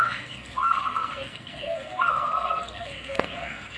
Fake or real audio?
fake